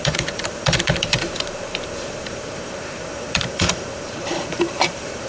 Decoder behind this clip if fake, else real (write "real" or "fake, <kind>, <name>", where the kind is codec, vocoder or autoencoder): fake, vocoder, BigVGAN v2